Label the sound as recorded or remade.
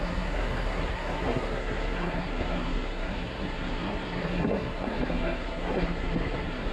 remade